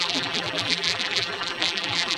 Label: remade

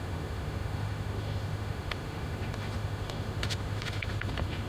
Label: remade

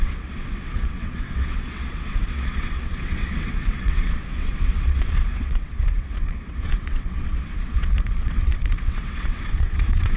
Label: remade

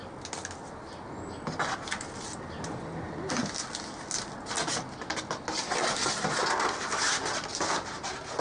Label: recorded